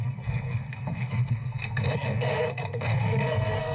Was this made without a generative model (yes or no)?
no